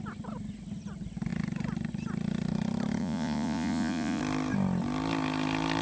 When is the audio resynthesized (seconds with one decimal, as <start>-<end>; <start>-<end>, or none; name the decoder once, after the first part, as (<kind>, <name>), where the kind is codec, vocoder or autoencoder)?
3.0-4.2 (vocoder, Vocos)